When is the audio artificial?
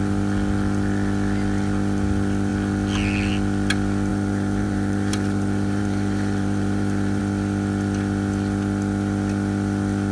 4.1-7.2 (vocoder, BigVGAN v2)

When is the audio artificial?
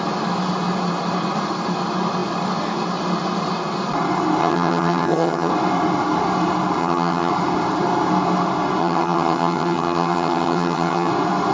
4.4-5.5 (vocoder, HiFi-GAN); 6.8-7.3; 8.8-11.1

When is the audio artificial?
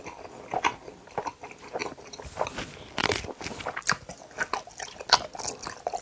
1.8-2.3 (vocoder, BigVGAN v2); 3.0-5.0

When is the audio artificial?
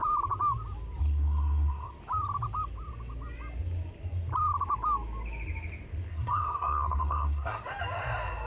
1.0-1.9 (codec, SNAC); 6.1-7.6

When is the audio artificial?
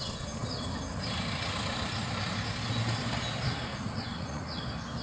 3.7-4.6 (vocoder, Vocos)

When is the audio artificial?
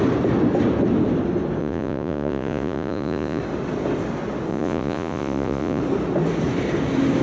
1.6-3.4 (vocoder, Vocos); 4.5-5.8